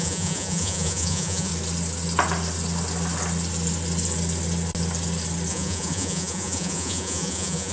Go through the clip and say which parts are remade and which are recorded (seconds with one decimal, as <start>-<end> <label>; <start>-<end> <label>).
0.0-1.5 remade; 1.5-5.5 recorded; 5.5-7.7 remade